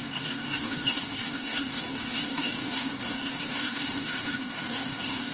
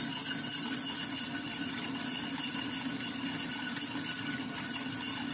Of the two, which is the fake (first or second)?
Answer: first